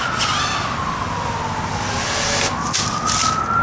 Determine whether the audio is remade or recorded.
recorded